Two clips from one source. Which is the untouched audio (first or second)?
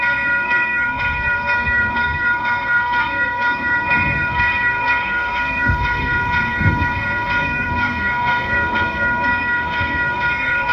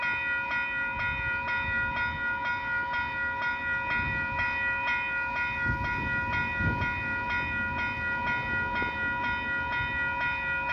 second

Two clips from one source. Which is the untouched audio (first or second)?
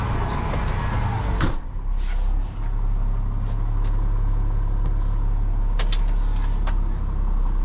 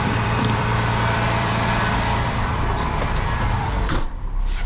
first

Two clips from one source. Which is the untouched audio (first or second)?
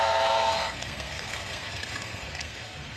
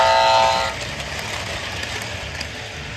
second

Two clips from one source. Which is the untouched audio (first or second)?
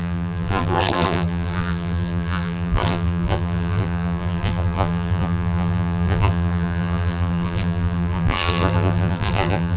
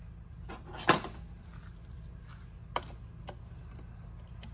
second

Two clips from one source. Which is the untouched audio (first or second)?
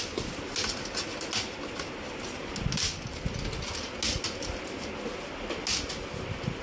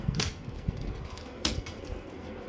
first